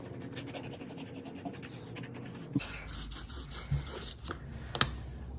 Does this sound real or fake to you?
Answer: real